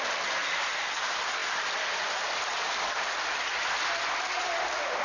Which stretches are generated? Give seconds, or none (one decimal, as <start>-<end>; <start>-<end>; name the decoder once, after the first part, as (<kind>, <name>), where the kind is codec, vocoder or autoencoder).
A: none

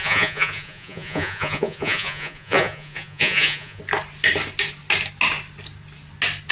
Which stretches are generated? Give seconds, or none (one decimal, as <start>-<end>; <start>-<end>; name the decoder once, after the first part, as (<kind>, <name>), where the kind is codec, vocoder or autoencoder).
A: 0.0-3.8 (vocoder, Vocos)

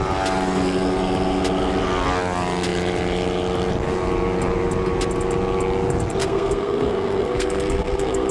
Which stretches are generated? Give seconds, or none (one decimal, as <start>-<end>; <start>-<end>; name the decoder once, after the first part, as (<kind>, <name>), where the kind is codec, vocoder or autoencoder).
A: 6.2-8.3 (codec, SNAC)

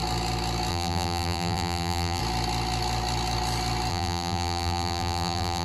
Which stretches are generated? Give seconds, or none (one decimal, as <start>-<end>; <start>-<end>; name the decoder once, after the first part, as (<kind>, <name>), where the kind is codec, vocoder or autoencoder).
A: 0.7-2.2 (vocoder, BigVGAN v2); 3.9-5.6

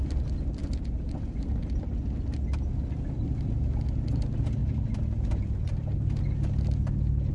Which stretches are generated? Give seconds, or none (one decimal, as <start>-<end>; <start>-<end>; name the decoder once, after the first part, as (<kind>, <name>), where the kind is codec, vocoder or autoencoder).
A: 0.6-1.9 (vocoder, BigVGAN v2); 4.6-6.1

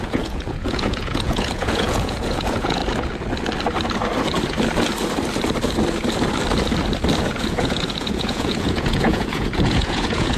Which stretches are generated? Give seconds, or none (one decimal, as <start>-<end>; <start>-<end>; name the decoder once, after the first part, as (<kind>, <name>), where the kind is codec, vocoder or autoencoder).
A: 0.0-2.8 (vocoder, Vocos); 7.2-10.4